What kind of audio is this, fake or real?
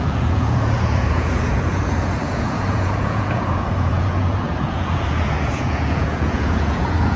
fake